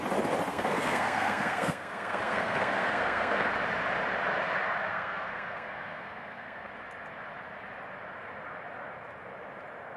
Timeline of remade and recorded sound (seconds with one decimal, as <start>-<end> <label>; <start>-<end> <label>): 0.0-0.5 recorded; 0.5-3.5 remade; 3.5-4.9 recorded; 4.9-6.7 remade; 6.7-10.0 recorded